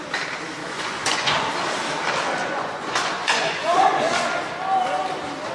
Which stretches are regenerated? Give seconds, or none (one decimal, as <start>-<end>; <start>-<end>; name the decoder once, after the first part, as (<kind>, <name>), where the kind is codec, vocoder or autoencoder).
0.6-1.5 (vocoder, Vocos); 2.4-4.0